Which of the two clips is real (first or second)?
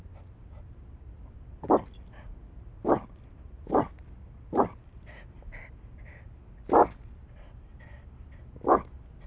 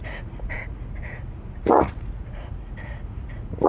first